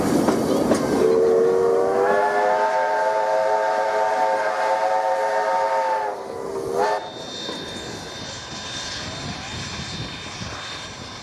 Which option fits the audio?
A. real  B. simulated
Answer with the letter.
A